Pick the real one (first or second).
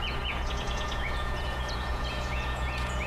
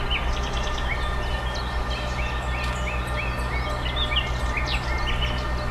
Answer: second